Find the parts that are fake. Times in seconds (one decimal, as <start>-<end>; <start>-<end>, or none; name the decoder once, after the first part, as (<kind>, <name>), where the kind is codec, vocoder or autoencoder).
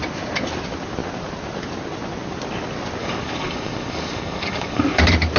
3.0-5.0 (codec, DAC)